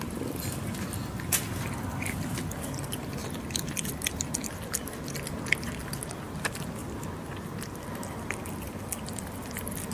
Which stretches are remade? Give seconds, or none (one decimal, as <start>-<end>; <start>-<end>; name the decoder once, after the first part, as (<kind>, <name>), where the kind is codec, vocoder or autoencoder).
6.8-8.4 (vocoder, BigVGAN v2)